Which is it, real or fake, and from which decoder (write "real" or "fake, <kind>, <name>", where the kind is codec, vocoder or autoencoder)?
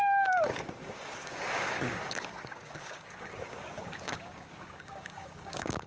fake, codec, DAC